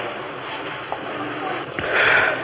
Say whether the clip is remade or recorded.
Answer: recorded